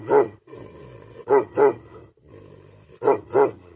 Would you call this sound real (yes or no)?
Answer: yes